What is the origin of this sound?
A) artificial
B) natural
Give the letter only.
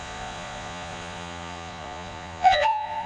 A